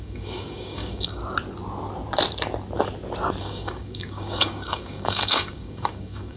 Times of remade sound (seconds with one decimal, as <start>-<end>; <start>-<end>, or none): 0.0-1.2; 3.4-6.4